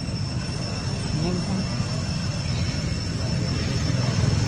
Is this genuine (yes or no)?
yes